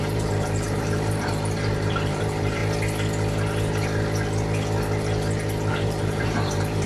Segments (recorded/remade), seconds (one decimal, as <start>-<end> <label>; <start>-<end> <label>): 0.0-2.6 remade; 2.6-5.7 recorded; 5.7-6.9 remade